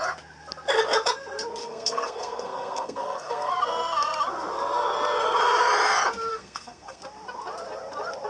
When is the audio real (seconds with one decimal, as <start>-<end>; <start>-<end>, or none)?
0.0-1.6; 3.5-6.3; 7.0-8.3